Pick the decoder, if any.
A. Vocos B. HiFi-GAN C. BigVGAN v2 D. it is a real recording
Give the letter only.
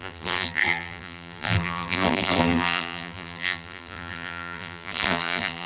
C